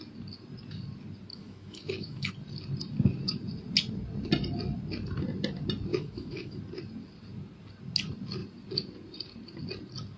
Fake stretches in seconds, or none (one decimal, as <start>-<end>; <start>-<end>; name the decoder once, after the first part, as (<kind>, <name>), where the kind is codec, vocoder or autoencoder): 1.3-2.3 (autoencoder, DAC-VAE); 5.9-6.6